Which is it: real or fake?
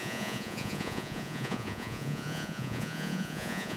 fake